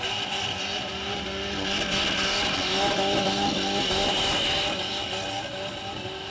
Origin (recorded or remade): recorded